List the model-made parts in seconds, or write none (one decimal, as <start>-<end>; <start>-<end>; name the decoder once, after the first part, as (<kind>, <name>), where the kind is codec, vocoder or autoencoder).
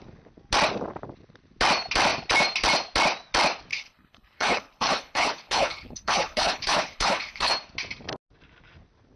3.7-7.5 (codec, HILCodec)